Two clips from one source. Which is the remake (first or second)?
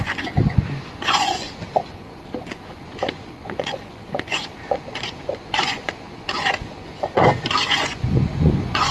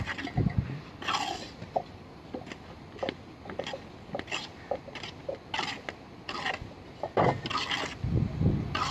first